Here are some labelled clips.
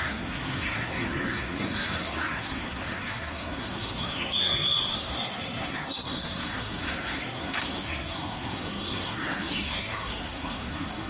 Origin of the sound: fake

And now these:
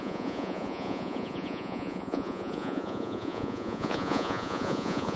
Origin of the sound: fake